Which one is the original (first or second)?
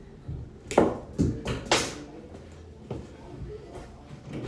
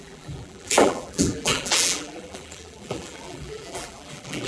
first